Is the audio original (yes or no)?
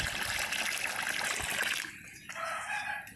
yes